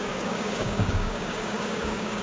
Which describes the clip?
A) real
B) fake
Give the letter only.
B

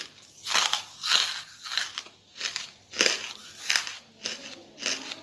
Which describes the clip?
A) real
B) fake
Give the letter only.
A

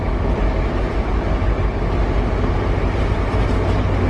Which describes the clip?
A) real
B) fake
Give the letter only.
A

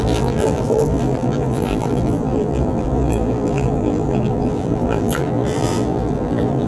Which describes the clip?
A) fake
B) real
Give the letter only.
A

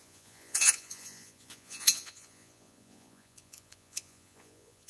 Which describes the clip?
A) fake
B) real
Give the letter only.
A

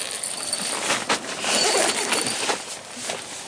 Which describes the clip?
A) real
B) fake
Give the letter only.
A